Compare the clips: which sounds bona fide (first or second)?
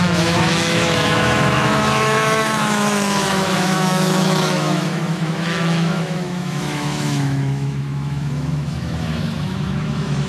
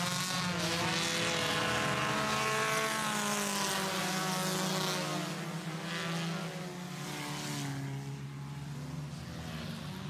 second